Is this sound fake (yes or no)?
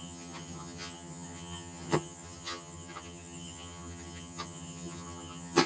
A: yes